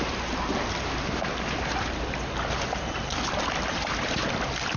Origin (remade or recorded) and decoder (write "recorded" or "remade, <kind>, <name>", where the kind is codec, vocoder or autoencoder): recorded